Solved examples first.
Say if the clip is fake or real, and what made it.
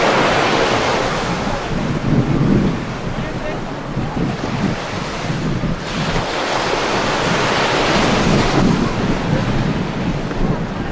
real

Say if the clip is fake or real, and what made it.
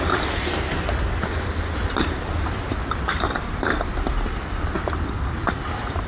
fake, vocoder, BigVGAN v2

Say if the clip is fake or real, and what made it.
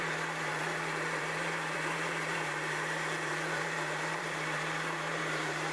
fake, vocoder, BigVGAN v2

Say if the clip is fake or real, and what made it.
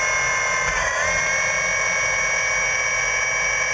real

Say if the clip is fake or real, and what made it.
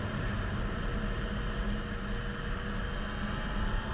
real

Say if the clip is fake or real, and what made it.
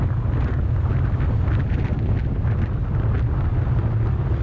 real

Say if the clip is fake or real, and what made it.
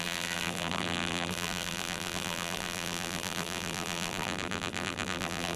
fake, vocoder, BigVGAN v2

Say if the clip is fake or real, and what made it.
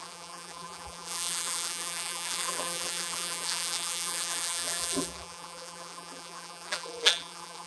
fake, vocoder, BigVGAN v2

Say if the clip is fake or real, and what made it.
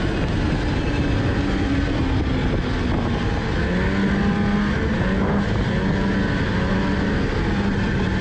real